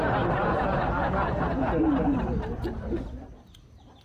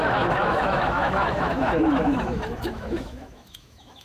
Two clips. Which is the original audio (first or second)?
first